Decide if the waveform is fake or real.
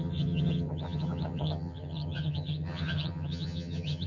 fake